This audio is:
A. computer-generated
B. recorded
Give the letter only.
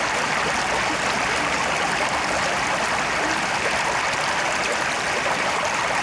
B